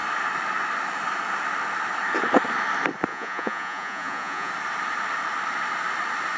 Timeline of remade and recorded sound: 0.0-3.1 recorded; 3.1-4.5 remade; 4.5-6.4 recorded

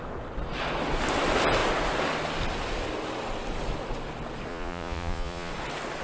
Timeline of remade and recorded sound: 0.0-4.5 recorded; 4.5-5.5 remade; 5.5-6.0 recorded

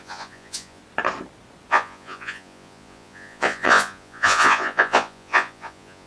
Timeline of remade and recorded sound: 0.0-0.8 remade; 0.8-1.7 recorded; 1.7-6.1 remade